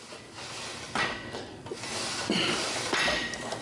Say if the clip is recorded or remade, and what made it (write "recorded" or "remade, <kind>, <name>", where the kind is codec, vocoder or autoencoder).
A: recorded